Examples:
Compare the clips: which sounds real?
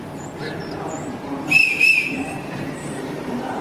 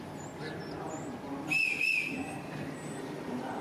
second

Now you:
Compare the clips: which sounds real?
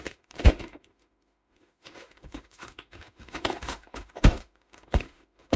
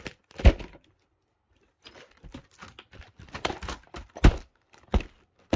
second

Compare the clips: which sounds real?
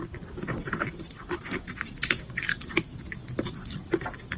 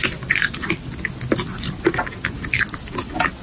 second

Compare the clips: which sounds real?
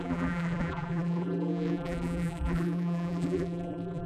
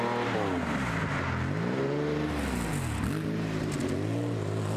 second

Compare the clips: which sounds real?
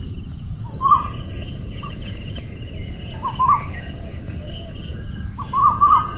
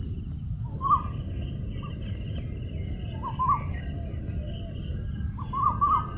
second